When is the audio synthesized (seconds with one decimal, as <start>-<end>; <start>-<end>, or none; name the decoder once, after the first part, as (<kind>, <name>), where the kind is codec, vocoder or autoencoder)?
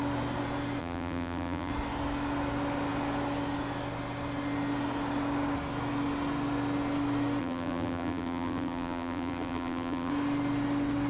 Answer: 0.8-1.7 (vocoder, BigVGAN v2); 7.4-10.1